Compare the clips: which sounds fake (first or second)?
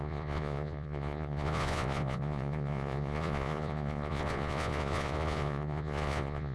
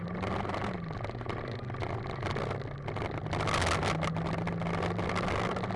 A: first